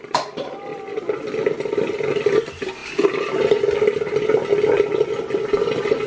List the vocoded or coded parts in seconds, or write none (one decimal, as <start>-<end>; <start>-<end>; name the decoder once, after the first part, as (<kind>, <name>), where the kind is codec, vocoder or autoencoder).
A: none